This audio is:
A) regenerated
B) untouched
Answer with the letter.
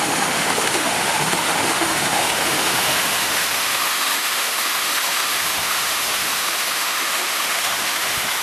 A